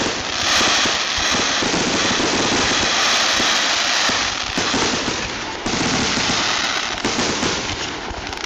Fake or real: real